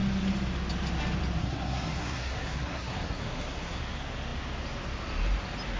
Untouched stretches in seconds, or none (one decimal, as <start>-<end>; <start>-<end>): 0.0-1.4; 3.8-5.8